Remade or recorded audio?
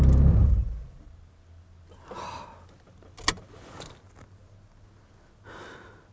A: recorded